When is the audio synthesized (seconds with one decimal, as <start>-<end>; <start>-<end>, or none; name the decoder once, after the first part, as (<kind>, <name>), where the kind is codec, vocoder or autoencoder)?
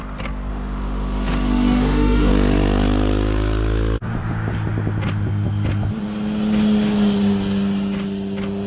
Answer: 0.5-2.3 (autoencoder, DAC-VAE)